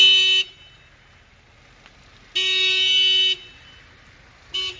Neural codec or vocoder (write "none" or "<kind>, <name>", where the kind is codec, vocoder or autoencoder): none